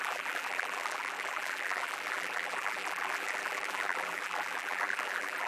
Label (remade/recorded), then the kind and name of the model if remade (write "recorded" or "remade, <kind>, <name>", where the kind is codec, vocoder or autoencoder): remade, vocoder, BigVGAN v2